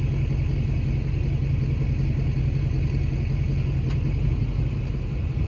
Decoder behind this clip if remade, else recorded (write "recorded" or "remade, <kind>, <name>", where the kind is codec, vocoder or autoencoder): recorded